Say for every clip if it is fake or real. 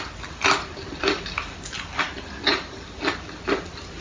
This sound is real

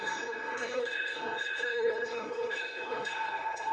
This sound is fake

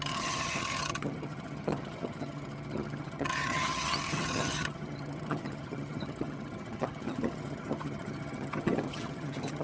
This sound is fake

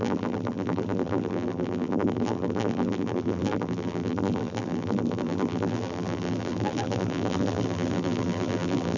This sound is fake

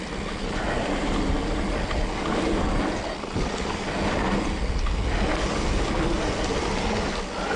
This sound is real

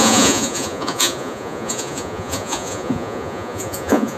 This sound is fake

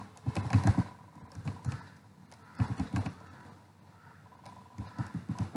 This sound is real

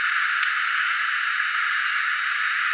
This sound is real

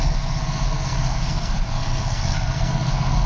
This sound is fake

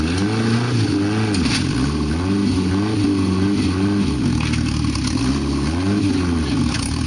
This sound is real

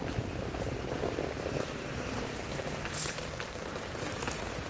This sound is real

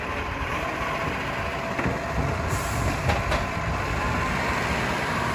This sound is real